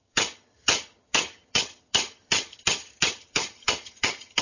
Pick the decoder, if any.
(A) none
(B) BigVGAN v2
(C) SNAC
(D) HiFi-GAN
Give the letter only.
D